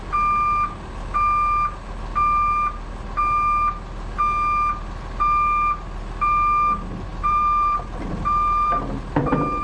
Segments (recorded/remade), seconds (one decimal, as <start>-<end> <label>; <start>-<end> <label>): 0.0-7.1 recorded; 7.1-9.6 remade